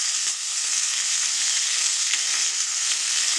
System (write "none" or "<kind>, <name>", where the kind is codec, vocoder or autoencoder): codec, SNAC